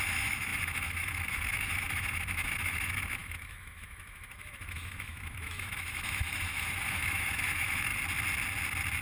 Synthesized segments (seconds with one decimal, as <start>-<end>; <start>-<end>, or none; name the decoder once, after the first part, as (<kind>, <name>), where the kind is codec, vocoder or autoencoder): 0.0-7.9 (autoencoder, DAC-VAE)